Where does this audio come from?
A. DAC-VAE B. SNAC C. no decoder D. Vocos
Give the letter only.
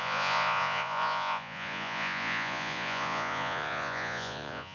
D